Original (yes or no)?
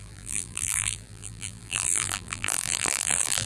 no